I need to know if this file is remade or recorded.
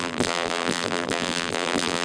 remade